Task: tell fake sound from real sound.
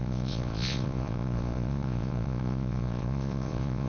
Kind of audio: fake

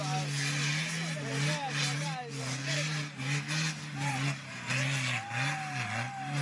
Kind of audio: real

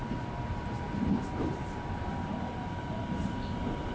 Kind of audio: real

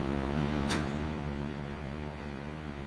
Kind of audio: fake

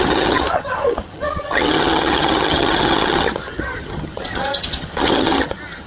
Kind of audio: fake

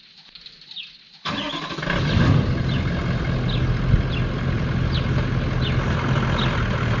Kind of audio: real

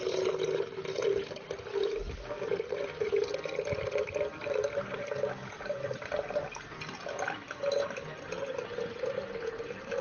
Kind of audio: real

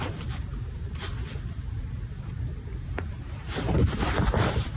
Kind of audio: fake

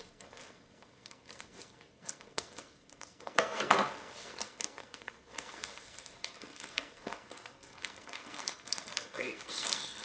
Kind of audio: fake